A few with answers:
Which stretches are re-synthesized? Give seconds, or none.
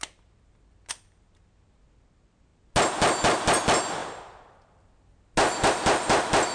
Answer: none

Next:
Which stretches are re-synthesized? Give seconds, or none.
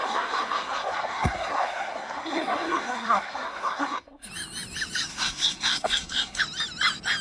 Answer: 0.0-4.3 (codec, SNAC); 5.1-6.4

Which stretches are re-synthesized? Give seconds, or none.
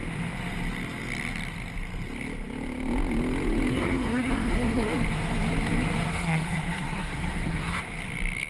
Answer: 3.7-4.9 (codec, SNAC); 6.1-7.8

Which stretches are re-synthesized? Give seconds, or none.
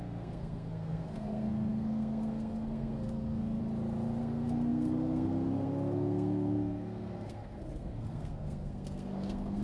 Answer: 0.0-3.6 (codec, SNAC); 4.2-9.6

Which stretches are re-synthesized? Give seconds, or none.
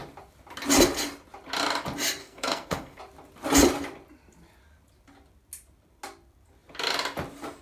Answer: 2.2-3.0 (codec, SNAC)